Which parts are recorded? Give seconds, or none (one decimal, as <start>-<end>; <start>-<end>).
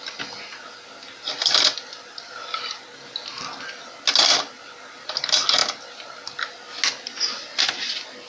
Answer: 0.0-8.3